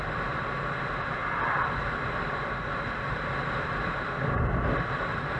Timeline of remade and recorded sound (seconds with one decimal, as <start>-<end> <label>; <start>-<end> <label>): 0.0-5.4 recorded